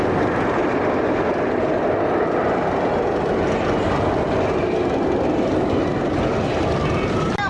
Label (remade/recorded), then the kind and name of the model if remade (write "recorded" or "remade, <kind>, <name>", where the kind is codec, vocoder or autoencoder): recorded